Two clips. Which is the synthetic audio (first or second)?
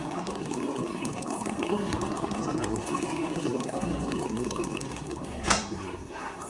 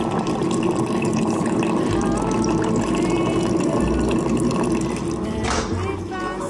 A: first